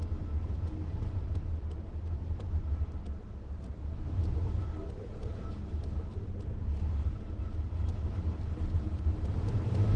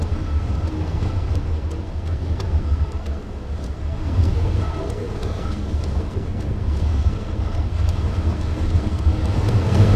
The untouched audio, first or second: first